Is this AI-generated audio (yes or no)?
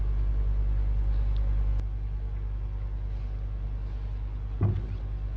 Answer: no